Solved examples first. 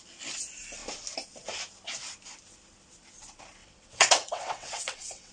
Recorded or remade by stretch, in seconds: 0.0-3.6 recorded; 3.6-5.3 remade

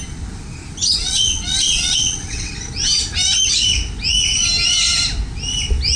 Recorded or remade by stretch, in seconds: 0.0-1.0 recorded; 1.0-2.5 remade; 2.5-6.0 recorded

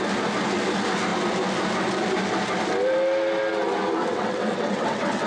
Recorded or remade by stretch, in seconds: 0.0-4.0 recorded; 4.0-5.3 remade

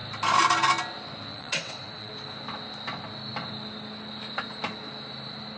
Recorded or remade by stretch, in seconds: 0.0-1.3 recorded; 1.3-2.1 remade; 2.1-5.6 recorded

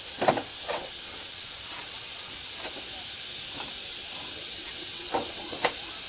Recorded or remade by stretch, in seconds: 0.0-0.5 recorded; 0.5-2.5 remade; 2.5-3.9 recorded; 3.9-5.6 remade; 5.6-6.1 recorded